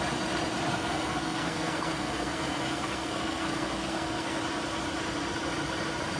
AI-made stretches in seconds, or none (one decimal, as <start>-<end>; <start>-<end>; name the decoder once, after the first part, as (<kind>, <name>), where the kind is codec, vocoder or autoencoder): 0.7-4.4 (codec, SNAC)